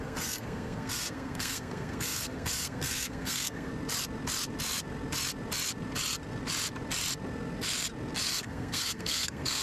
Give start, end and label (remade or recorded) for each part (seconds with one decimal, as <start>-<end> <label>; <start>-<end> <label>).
0.0-3.7 remade; 3.7-8.3 recorded; 8.3-9.6 remade